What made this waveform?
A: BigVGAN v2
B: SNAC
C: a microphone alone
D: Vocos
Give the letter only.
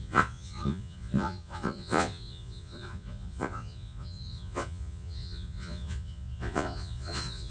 D